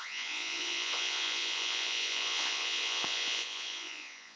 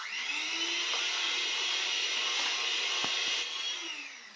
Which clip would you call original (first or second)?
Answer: second